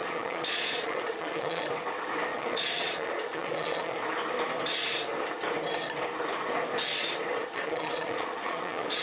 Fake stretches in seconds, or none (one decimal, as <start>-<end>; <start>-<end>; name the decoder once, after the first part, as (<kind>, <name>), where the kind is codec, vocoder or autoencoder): 0.0-1.7 (vocoder, Vocos); 2.3-4.0; 7.4-9.0